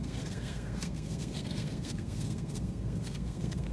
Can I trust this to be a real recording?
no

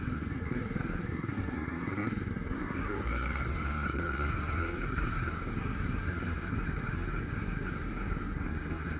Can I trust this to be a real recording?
no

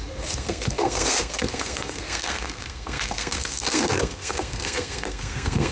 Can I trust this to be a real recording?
no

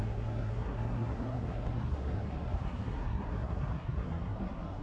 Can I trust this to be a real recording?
no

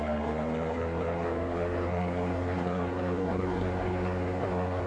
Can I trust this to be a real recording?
no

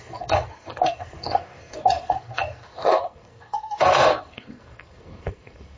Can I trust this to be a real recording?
no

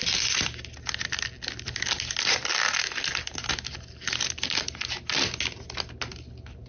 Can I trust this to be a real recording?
yes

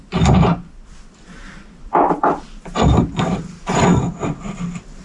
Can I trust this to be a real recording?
yes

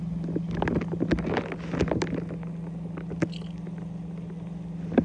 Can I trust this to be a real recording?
yes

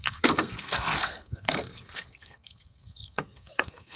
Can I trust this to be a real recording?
no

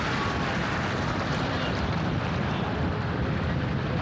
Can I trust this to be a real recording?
yes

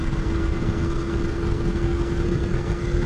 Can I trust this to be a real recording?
no